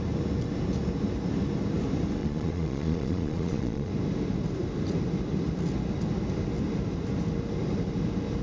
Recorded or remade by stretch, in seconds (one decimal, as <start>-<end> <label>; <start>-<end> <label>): 0.0-2.2 recorded; 2.2-3.9 remade; 3.9-8.4 recorded